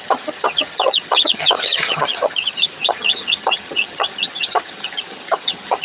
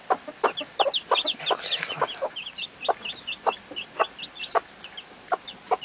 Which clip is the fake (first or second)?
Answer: first